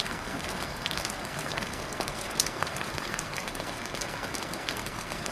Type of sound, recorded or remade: remade